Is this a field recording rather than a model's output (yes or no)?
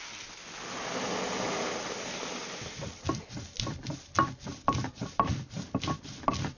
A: yes